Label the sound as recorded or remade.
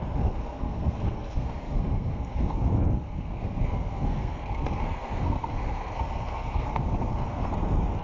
remade